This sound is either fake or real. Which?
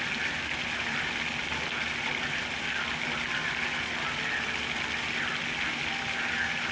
real